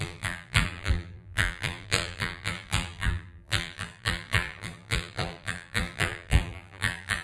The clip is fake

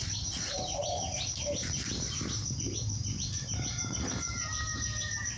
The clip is fake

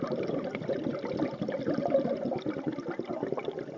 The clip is real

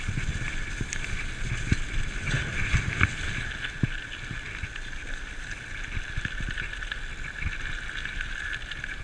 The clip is real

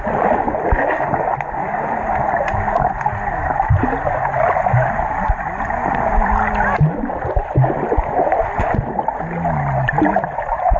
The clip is real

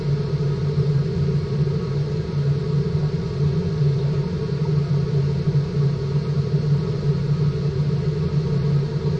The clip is real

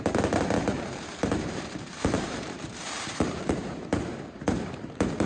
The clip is fake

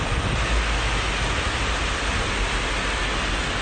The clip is real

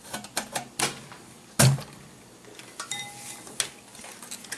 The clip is real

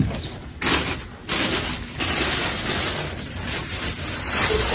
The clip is real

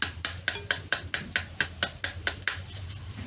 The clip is real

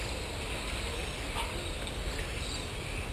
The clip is real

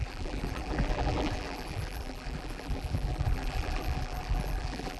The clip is fake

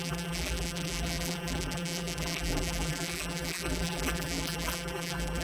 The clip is fake